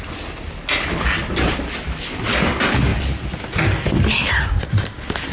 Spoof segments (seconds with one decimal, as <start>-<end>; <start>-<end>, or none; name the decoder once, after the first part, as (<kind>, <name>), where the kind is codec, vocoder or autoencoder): none